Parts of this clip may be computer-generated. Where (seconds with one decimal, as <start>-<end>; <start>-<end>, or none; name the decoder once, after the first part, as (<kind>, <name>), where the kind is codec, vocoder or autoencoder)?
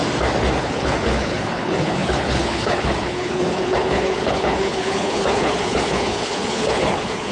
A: 0.6-7.3 (codec, HILCodec)